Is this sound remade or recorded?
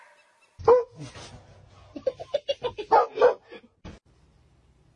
recorded